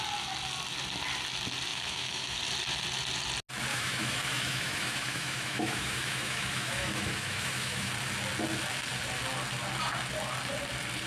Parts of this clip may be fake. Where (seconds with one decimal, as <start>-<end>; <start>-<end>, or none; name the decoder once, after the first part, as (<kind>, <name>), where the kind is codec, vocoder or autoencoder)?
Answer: 1.7-2.4 (autoencoder, DAC-VAE); 3.7-7.9